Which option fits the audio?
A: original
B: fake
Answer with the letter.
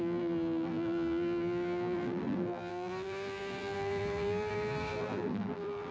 B